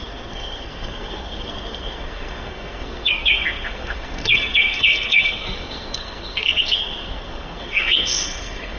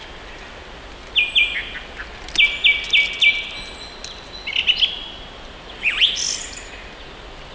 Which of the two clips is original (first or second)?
second